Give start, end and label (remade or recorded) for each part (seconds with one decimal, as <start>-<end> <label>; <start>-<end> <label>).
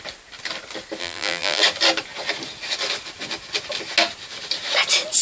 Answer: 0.0-1.0 recorded; 1.0-1.6 remade; 1.6-5.2 recorded